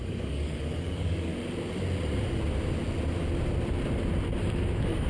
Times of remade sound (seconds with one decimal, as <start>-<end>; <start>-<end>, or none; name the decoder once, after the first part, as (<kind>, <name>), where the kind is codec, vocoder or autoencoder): 0.0-1.3 (codec, DAC); 4.4-5.1